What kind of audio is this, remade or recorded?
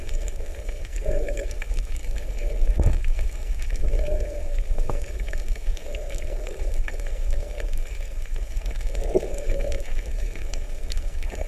remade